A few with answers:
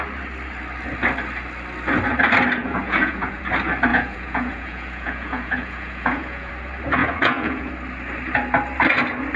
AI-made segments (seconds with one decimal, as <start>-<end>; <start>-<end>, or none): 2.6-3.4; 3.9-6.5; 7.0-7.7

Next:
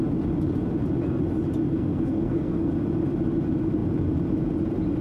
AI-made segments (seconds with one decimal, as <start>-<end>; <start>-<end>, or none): 1.7-2.7

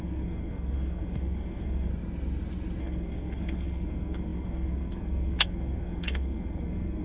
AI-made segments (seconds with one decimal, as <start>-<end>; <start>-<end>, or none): 0.0-1.9; 2.8-7.0